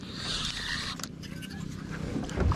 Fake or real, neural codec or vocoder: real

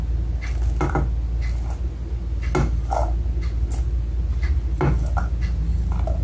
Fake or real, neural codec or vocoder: real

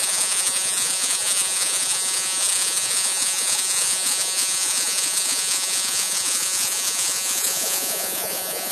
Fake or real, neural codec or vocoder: fake, vocoder, Vocos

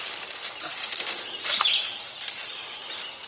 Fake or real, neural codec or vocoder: real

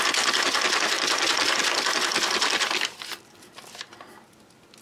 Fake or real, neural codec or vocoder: real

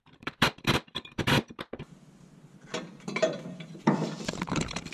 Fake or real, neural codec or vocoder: fake, vocoder, BigVGAN v2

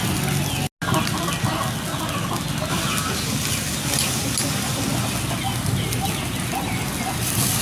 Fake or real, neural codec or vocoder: real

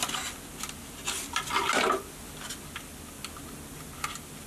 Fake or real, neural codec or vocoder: real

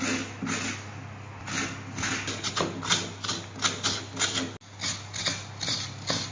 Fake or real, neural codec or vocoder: real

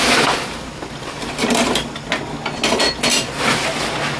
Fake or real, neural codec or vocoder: real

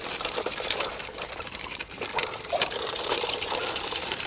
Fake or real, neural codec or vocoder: fake, vocoder, BigVGAN v2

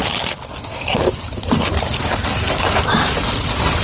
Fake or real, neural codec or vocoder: fake, vocoder, BigVGAN v2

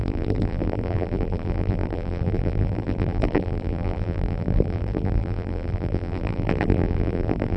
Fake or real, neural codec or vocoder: fake, vocoder, BigVGAN v2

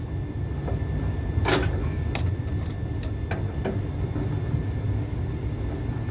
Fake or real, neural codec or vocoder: real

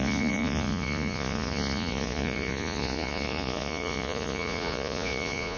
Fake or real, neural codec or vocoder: fake, vocoder, Vocos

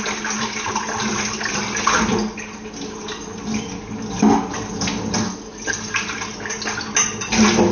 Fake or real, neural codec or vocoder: real